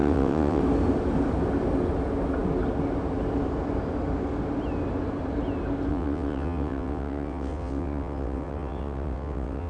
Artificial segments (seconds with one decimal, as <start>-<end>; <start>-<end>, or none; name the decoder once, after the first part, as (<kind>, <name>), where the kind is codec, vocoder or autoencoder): 0.0-0.6 (vocoder, WaveNeXt); 5.9-9.7